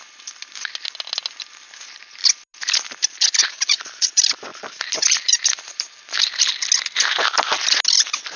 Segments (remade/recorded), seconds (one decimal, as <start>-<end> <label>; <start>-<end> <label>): 0.0-3.4 recorded; 3.4-4.1 remade; 4.1-4.5 recorded; 4.5-6.4 remade; 6.4-8.4 recorded